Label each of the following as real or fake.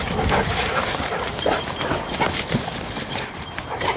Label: fake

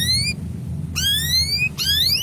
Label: real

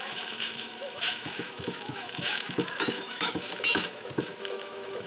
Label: fake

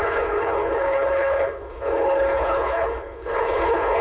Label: fake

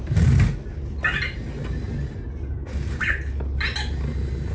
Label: real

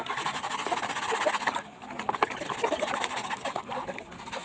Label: real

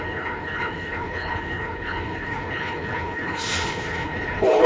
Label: fake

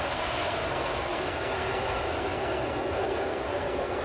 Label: fake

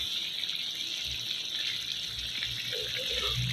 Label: real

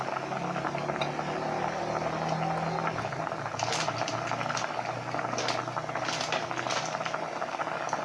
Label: real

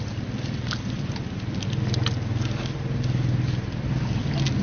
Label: real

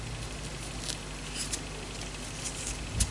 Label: real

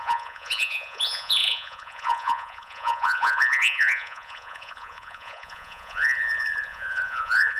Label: fake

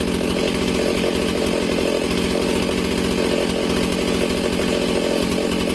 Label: real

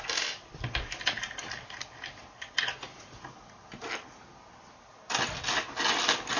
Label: real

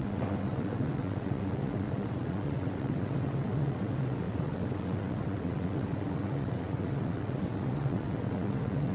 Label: fake